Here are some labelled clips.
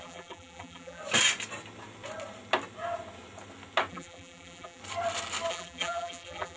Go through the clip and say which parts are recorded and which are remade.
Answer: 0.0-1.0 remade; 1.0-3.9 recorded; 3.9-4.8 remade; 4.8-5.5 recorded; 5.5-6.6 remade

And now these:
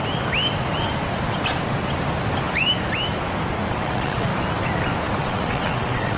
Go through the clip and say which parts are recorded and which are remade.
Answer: 0.0-3.7 recorded; 3.7-4.3 remade; 4.3-5.2 recorded; 5.2-6.2 remade

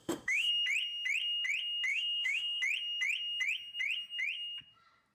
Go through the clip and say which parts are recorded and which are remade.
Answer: 0.0-0.5 remade; 0.5-1.9 recorded; 1.9-2.6 remade; 2.6-5.1 recorded